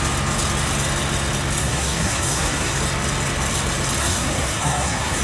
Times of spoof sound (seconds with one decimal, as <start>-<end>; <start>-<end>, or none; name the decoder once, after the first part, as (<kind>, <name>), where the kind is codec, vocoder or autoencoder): 1.6-2.8 (codec, SNAC); 4.0-5.2